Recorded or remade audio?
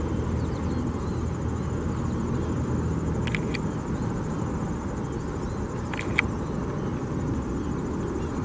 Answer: recorded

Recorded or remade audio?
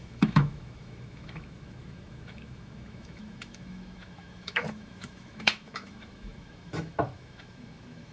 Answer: remade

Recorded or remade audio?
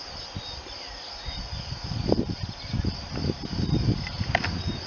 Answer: recorded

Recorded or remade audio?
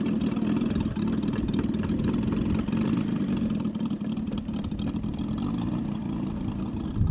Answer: recorded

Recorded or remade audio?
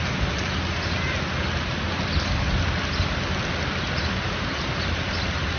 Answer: recorded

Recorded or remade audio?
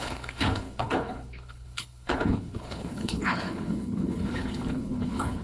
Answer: remade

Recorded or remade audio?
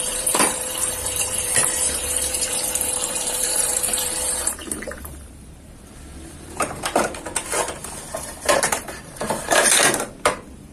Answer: remade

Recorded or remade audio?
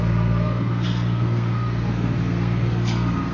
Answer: remade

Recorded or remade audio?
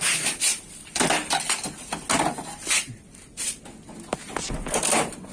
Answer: recorded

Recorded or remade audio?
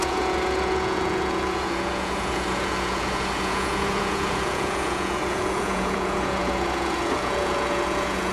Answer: remade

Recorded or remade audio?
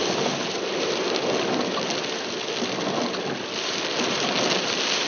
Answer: recorded